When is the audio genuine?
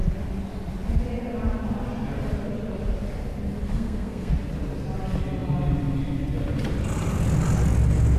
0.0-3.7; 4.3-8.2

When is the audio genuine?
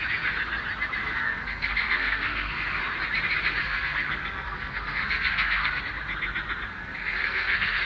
0.0-1.0; 2.8-3.6; 5.8-6.7